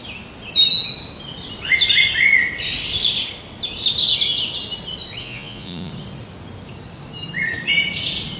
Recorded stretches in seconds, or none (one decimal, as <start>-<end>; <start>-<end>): 0.0-5.2; 5.9-8.4